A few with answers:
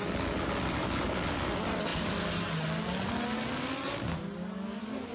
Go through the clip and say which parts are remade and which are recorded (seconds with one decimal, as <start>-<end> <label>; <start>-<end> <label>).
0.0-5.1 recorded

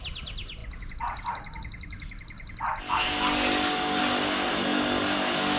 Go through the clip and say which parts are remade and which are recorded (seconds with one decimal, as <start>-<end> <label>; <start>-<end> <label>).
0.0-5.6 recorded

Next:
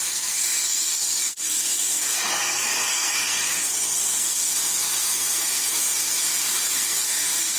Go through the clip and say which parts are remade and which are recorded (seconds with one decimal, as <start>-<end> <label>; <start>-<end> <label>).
0.0-7.6 remade

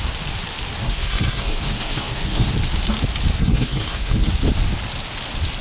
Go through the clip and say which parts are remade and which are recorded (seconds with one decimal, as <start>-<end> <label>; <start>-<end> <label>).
0.0-0.8 recorded; 0.8-2.5 remade; 2.5-3.4 recorded; 3.4-4.3 remade; 4.3-5.6 recorded

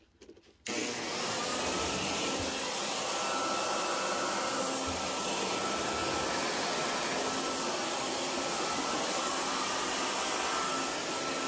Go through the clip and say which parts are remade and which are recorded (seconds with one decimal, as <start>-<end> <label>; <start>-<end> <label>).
0.0-11.5 recorded